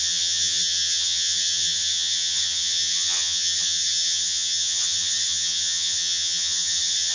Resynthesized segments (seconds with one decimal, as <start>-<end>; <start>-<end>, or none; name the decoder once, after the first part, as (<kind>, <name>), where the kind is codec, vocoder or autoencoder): 0.0-7.1 (vocoder, HiFi-GAN)